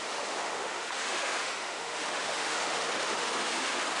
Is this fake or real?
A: fake